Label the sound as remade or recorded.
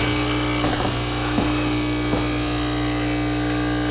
recorded